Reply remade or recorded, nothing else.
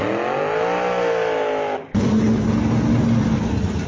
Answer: recorded